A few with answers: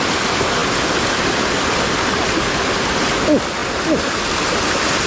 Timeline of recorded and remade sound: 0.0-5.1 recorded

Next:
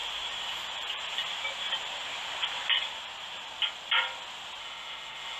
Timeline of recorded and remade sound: 0.0-4.6 recorded; 4.6-5.4 remade